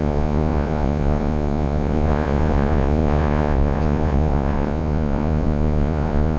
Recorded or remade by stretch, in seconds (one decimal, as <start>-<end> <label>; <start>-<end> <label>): 0.0-6.4 remade

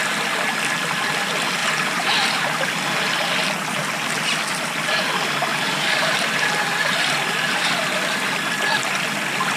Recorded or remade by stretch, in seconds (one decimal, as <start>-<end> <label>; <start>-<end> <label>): 0.0-1.6 recorded; 1.6-2.1 remade; 2.1-5.5 recorded; 5.5-7.7 remade; 7.7-9.6 recorded

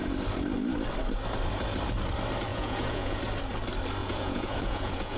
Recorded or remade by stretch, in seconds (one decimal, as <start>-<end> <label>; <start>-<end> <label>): 0.0-2.5 recorded; 2.5-3.2 remade; 3.2-4.0 recorded; 4.0-5.2 remade

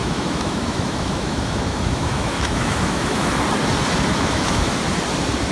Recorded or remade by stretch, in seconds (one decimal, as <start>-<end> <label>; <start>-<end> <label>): 0.0-3.3 remade; 3.3-4.1 recorded; 4.1-4.8 remade; 4.8-5.5 recorded

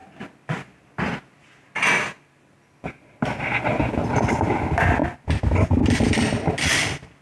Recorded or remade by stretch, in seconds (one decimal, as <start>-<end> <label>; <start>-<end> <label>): 0.0-7.2 recorded

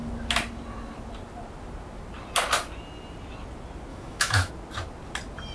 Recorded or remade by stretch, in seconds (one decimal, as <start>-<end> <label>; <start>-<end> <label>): 0.0-3.9 recorded; 3.9-4.5 remade; 4.5-5.5 recorded

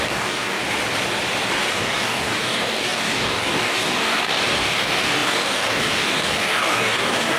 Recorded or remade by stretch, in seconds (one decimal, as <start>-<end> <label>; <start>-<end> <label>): 0.0-0.6 remade; 0.6-1.7 recorded; 1.7-7.4 remade